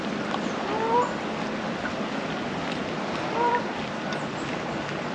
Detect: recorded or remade recorded